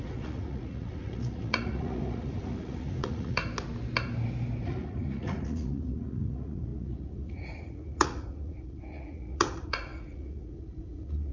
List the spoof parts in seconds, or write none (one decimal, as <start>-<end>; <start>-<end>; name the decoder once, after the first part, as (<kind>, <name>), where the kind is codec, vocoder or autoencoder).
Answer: 0.0-3.4 (vocoder, Vocos); 4.6-11.3